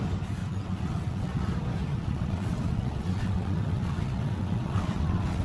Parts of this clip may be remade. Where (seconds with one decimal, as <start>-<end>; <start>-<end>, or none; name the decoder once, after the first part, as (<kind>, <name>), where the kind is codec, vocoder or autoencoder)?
0.4-1.5 (vocoder, WaveNeXt); 1.9-5.4